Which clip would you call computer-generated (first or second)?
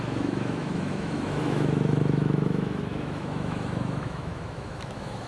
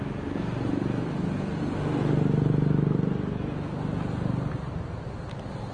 first